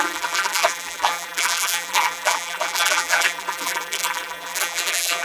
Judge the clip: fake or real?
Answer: fake